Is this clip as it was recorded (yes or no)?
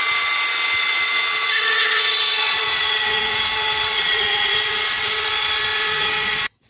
no